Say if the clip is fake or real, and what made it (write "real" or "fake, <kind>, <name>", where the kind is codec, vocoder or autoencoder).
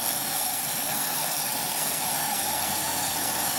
fake, codec, SNAC